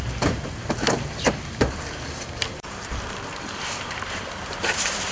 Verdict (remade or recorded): remade